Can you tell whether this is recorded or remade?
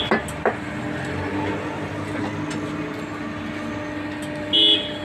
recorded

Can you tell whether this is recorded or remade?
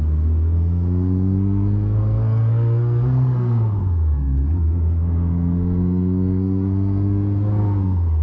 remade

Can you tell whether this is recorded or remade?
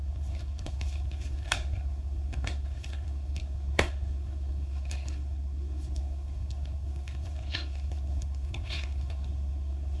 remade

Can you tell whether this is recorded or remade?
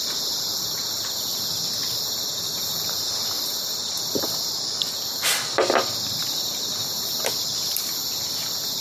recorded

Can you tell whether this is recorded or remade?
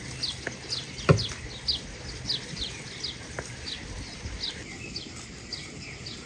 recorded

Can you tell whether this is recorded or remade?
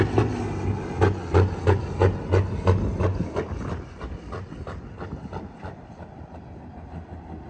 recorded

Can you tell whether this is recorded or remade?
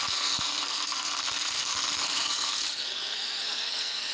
remade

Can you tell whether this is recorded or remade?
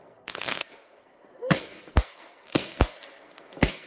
remade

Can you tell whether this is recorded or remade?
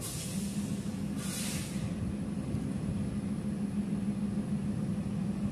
recorded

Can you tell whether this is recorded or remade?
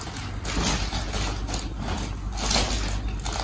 recorded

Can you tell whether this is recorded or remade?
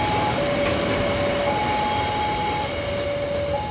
recorded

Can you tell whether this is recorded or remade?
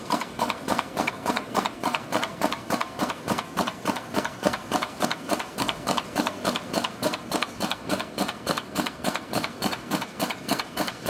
remade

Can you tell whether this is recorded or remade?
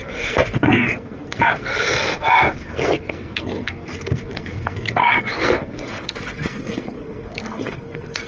remade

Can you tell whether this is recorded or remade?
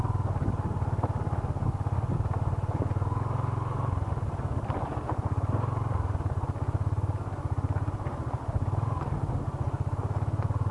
recorded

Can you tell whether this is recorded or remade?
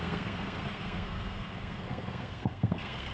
remade